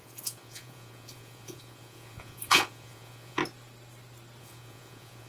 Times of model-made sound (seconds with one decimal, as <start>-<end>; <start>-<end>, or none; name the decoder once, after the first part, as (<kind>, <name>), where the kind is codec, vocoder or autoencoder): 0.0-3.4 (vocoder, Vocos); 4.4-5.3

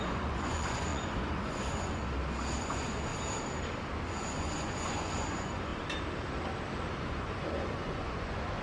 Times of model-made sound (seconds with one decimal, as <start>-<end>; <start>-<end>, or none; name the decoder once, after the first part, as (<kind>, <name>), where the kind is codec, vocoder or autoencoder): 0.0-2.0 (vocoder, Vocos); 2.6-3.1; 4.1-5.7; 7.0-8.6

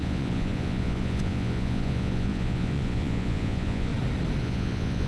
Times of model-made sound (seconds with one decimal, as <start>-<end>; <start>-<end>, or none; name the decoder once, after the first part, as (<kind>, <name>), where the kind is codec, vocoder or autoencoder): 0.0-3.9 (vocoder, Vocos); 4.4-5.1

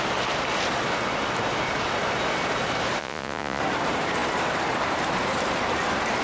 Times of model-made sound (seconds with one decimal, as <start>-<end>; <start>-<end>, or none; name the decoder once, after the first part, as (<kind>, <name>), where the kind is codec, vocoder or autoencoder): 3.0-3.6 (vocoder, Vocos)

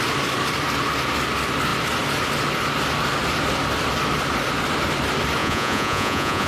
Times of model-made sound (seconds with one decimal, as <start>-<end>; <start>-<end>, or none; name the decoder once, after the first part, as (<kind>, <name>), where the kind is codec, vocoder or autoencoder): 5.4-6.5 (vocoder, Vocos)

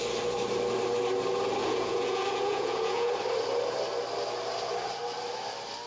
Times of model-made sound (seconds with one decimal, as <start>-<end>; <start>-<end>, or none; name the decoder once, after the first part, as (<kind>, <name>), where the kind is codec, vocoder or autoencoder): 1.6-3.1 (vocoder, Vocos)

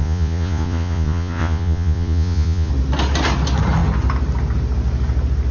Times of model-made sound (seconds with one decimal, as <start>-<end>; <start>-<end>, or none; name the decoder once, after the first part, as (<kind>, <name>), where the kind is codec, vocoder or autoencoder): 0.0-2.7 (vocoder, Vocos)